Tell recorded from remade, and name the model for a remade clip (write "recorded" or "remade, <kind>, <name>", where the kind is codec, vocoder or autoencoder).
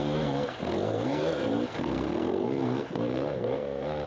remade, codec, SNAC